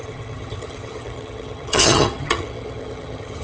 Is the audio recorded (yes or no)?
no